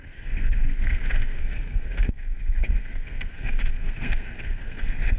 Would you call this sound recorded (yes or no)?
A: no